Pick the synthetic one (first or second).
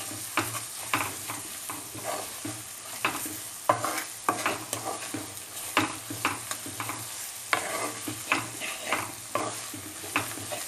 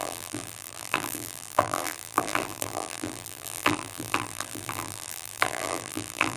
second